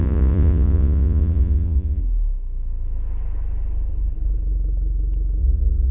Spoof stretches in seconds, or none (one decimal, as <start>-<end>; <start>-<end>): 0.0-2.0; 5.4-5.9